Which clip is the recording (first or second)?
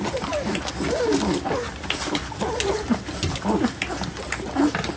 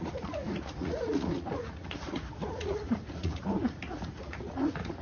first